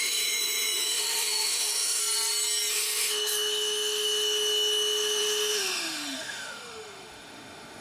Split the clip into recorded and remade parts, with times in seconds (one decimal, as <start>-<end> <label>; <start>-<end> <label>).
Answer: 0.0-2.0 remade; 2.0-2.7 recorded; 2.7-7.8 remade